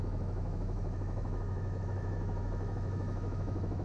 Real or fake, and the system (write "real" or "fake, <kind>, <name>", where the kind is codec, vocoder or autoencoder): fake, autoencoder, DAC-VAE